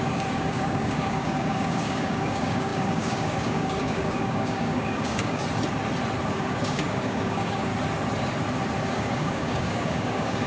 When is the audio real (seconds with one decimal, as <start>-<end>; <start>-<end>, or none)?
5.4-6.3; 7.7-8.9

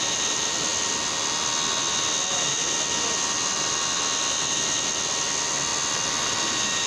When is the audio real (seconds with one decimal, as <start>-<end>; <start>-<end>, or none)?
0.0-6.9